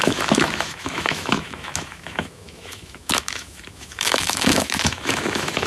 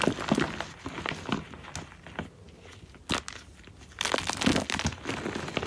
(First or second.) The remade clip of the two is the first